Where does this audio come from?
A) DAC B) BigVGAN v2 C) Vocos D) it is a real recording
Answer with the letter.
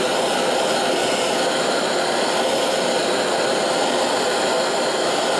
D